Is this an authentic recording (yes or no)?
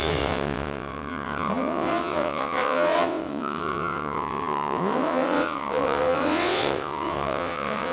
no